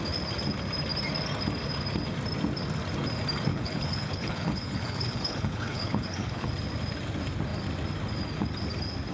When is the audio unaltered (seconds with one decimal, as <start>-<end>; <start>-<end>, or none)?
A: 0.0-3.5; 6.5-9.1